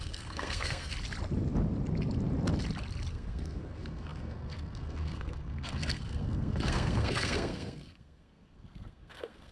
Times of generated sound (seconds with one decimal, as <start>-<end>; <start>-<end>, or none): 0.0-0.9; 3.1-9.5

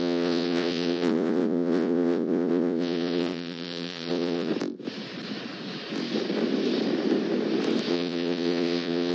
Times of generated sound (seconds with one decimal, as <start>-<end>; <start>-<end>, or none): 0.0-4.5; 7.9-9.1